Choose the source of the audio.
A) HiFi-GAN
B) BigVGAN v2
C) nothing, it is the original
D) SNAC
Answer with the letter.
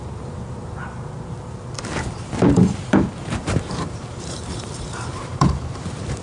B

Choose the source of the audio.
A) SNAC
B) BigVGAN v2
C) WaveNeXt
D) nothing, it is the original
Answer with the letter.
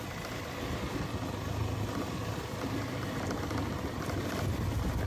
D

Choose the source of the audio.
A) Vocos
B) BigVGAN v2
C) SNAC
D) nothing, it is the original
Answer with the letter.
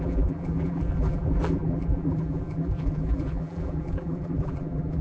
B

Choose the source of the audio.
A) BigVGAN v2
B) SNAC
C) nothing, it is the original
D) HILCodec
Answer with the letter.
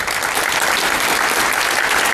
C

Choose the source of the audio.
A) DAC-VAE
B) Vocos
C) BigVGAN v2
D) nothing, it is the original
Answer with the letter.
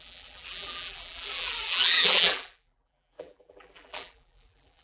C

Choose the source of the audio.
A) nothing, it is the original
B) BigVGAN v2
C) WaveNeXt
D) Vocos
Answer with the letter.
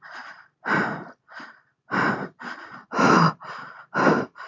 A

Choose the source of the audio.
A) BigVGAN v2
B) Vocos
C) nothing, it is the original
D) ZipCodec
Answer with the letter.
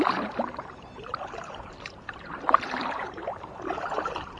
A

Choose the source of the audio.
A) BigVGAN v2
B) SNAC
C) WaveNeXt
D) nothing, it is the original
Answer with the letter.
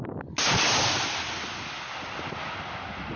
D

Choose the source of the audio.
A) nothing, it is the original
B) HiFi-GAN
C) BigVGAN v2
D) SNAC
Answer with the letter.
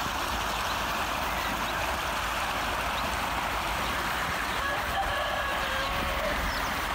C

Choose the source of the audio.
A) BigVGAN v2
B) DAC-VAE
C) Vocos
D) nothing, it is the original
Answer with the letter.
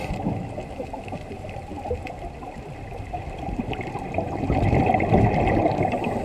A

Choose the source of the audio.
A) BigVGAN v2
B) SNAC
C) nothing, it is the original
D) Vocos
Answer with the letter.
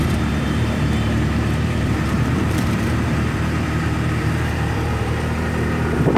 A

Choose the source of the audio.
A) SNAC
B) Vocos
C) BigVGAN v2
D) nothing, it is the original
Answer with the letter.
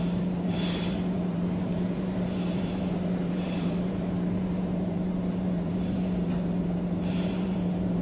C